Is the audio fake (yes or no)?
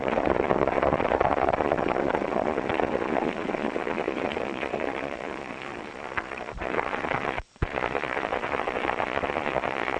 yes